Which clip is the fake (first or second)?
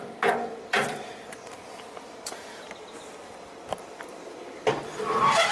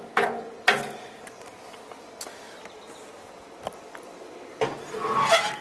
first